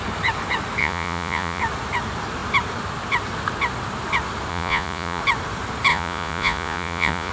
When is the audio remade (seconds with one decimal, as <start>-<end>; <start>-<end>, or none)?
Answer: 0.8-1.6; 4.5-5.2; 5.9-7.3